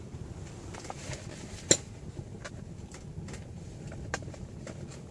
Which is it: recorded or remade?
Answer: recorded